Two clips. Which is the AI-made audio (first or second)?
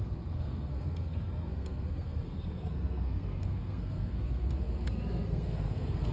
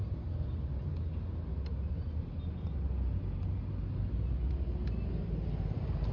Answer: first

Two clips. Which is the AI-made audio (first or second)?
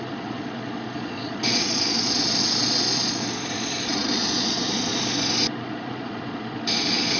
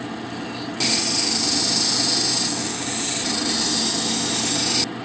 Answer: first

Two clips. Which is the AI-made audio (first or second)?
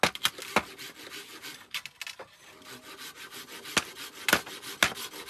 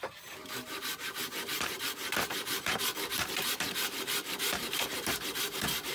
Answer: second